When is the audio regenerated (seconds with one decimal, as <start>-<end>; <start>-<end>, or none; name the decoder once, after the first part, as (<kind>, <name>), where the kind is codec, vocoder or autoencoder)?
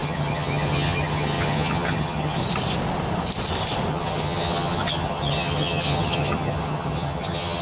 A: 0.0-2.4 (vocoder, HiFi-GAN); 3.9-7.6